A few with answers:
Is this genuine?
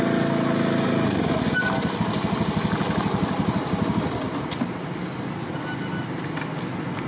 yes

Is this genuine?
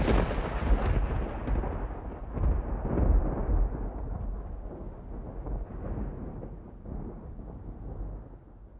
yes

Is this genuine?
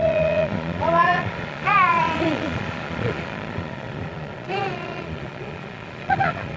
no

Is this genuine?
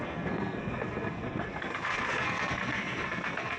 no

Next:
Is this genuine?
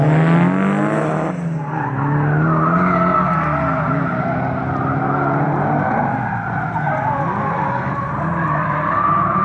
yes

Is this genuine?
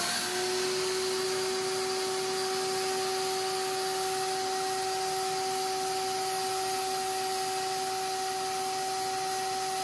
yes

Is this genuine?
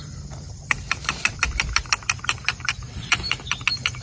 no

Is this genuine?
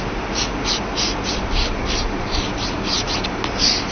yes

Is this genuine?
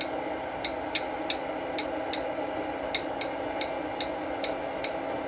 yes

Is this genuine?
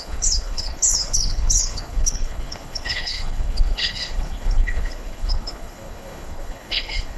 no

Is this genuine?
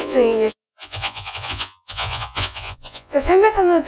no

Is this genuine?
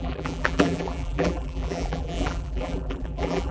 no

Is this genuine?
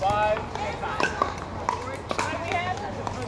yes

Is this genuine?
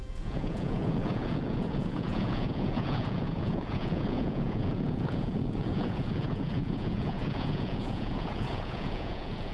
no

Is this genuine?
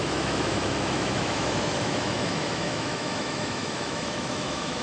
no